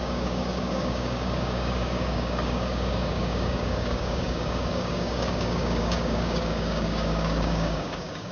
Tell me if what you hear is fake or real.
fake